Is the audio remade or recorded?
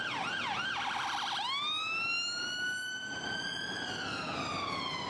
recorded